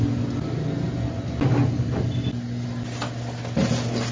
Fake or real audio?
real